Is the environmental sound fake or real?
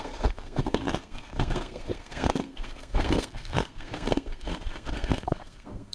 fake